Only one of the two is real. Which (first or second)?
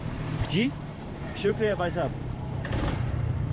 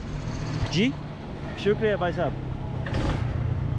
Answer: second